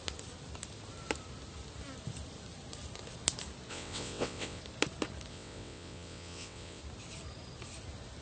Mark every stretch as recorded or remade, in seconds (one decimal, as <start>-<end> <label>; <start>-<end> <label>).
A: 0.0-3.7 recorded; 3.7-4.6 remade; 4.6-5.3 recorded; 5.3-6.8 remade; 6.8-8.2 recorded